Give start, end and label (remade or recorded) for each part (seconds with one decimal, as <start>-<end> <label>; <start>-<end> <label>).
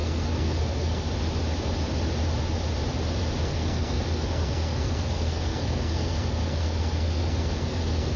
0.0-1.1 remade; 1.1-3.4 recorded; 3.4-8.2 remade